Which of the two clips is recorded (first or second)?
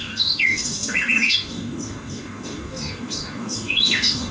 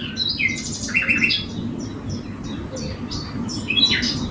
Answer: second